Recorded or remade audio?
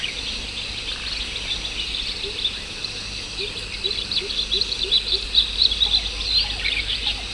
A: recorded